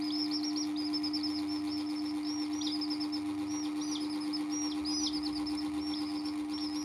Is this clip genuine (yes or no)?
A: yes